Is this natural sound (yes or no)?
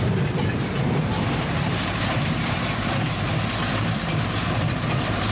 no